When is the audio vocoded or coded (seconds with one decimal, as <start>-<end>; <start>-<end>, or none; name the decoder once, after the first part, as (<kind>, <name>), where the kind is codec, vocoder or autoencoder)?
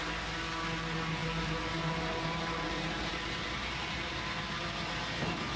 1.2-4.2 (vocoder, BigVGAN v2)